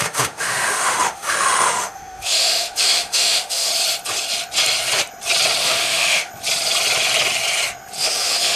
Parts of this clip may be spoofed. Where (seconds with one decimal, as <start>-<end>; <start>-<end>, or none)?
0.0-3.7; 5.6-6.3; 8.0-8.6